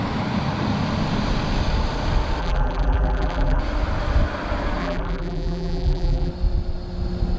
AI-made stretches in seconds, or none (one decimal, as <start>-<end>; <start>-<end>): 2.4-3.6; 4.8-6.3